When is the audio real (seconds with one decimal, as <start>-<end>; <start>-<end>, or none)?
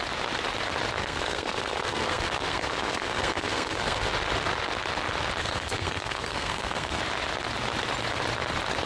0.0-1.0; 4.1-5.4; 7.0-8.9